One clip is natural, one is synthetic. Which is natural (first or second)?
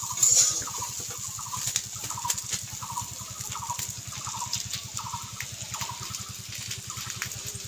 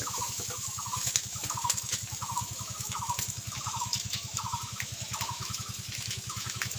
first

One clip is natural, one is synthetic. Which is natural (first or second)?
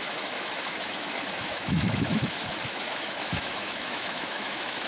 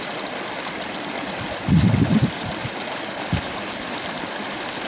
second